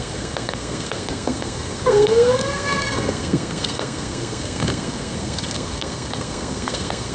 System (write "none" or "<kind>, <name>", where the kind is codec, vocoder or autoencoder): codec, SNAC